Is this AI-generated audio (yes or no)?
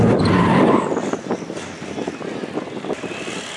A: no